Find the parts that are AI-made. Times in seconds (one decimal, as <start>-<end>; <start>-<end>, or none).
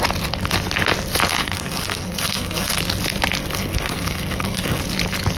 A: 1.3-2.8; 3.4-4.8